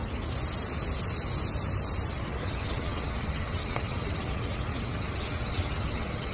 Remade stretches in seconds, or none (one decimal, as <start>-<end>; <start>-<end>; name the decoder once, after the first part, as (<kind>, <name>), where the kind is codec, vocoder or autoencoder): 2.1-6.3 (vocoder, WaveNeXt)